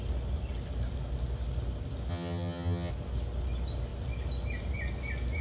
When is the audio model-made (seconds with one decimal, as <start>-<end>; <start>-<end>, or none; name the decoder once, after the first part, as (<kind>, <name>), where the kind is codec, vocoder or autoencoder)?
2.1-2.9 (vocoder, HiFi-GAN)